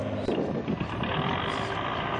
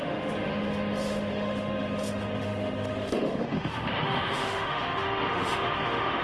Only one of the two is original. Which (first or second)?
first